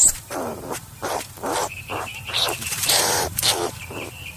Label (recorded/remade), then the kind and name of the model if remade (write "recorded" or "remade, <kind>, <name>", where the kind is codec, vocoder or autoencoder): remade, vocoder, BigVGAN v2